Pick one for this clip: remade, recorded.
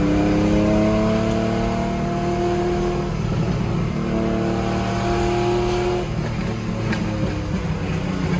recorded